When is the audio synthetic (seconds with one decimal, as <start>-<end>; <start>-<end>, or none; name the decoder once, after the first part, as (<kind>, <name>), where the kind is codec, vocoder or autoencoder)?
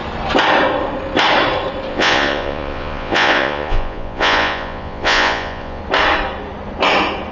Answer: 1.9-5.8 (vocoder, Vocos)